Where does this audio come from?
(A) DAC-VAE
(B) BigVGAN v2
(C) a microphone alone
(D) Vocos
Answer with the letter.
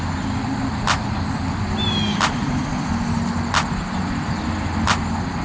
C